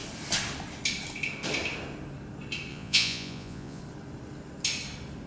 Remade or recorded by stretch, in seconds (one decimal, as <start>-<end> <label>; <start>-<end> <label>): 0.0-2.7 recorded; 2.7-3.8 remade; 3.8-5.3 recorded